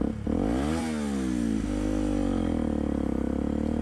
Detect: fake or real real